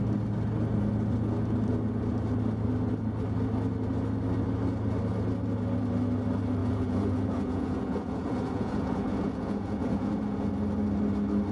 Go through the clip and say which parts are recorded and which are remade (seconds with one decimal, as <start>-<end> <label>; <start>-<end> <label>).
0.0-6.6 recorded; 6.6-10.5 remade; 10.5-11.5 recorded